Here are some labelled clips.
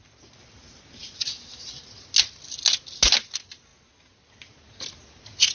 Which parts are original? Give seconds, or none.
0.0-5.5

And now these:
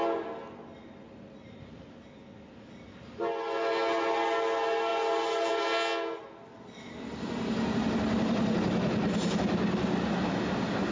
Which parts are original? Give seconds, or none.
0.0-10.9

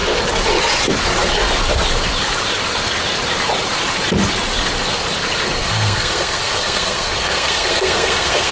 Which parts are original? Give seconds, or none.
0.0-5.6

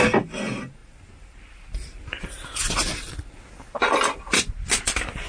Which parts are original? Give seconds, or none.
0.0-5.3

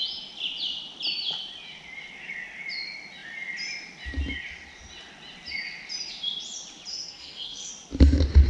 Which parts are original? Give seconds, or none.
0.0-6.9; 7.7-8.5